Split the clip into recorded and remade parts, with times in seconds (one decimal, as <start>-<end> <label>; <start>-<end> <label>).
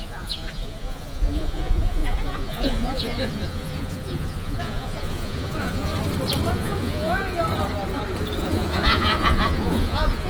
0.0-5.9 remade; 5.9-6.5 recorded; 6.5-7.4 remade; 7.4-8.4 recorded; 8.4-10.3 remade